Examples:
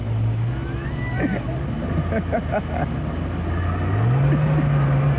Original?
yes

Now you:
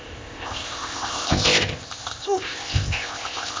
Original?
no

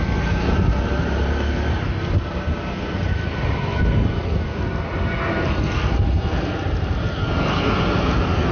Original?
yes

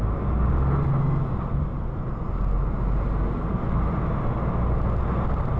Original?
yes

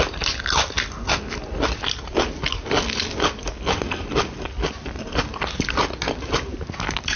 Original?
yes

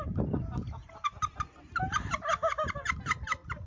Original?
yes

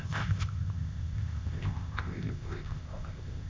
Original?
no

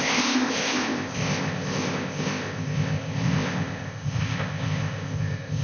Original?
no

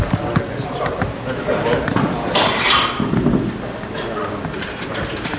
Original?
yes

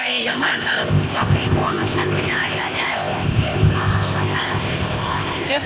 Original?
no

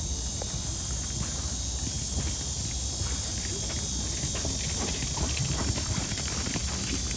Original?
yes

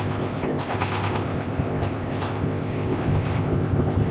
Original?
no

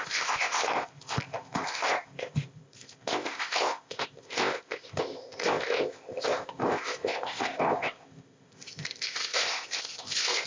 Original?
no